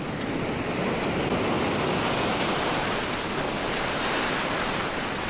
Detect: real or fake real